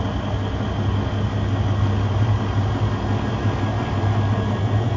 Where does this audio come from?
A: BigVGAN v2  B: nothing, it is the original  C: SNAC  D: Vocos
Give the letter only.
B